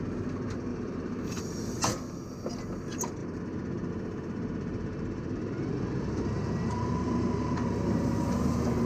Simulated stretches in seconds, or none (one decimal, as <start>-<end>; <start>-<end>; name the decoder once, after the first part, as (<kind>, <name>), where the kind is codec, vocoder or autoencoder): 0.7-1.4 (vocoder, BigVGAN v2); 4.7-8.9